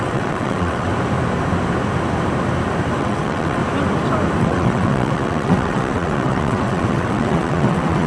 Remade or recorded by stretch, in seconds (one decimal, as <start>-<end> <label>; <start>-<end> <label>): 0.0-0.9 remade; 0.9-3.0 recorded; 3.0-3.6 remade; 3.6-4.4 recorded; 4.4-8.1 remade